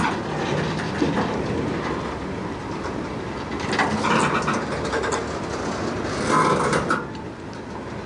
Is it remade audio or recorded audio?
recorded